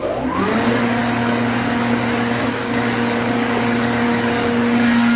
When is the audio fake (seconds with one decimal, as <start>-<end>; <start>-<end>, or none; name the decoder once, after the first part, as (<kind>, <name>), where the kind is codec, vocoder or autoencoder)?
0.0-5.2 (codec, DAC)